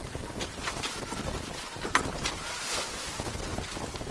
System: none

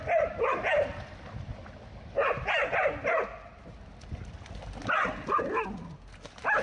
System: none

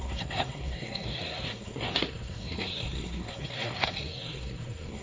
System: codec, SNAC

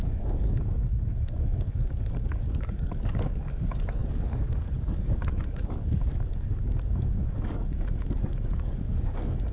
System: codec, DAC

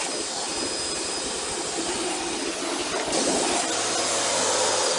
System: none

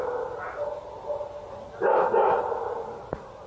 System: none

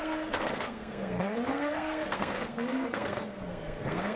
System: codec, SNAC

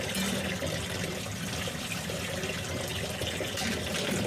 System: none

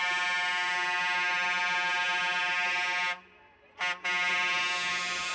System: none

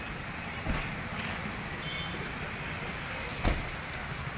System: none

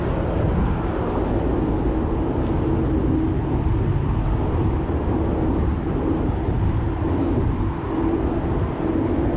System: none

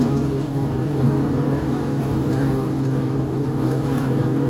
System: codec, DAC